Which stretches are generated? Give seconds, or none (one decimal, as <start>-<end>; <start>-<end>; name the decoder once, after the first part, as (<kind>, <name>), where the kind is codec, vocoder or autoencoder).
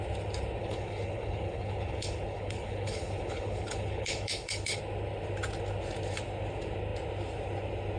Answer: 0.6-4.8 (codec, HILCodec)